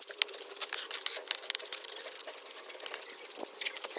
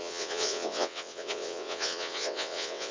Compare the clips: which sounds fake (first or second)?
second